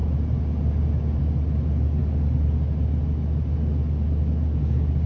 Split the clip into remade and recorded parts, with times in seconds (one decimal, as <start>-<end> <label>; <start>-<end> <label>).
0.0-5.1 recorded